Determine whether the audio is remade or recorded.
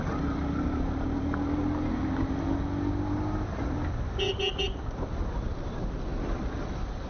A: recorded